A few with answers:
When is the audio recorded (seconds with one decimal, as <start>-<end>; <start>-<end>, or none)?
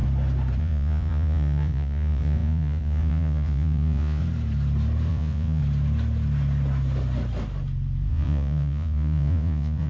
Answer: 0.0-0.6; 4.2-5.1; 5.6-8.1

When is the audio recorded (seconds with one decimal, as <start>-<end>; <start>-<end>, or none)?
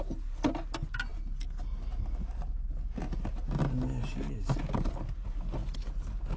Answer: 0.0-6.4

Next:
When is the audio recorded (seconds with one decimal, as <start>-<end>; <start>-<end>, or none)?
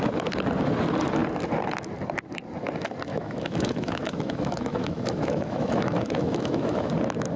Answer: 0.0-3.1; 6.9-7.4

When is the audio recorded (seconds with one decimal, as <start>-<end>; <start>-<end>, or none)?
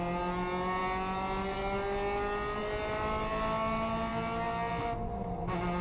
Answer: 0.0-5.8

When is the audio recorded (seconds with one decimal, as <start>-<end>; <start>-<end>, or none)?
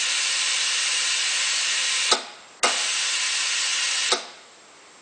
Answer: 0.0-5.0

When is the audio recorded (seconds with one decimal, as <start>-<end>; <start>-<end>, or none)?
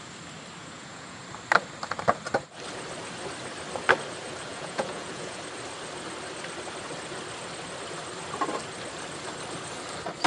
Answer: 0.0-0.6; 1.2-4.5; 5.4-10.3